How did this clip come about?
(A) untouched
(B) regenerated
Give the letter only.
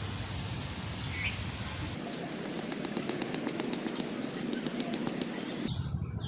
A